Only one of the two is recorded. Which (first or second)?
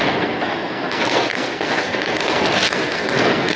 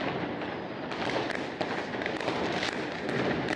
second